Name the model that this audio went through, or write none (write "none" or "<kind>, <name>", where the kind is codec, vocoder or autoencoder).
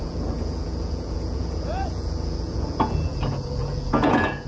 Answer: vocoder, Vocos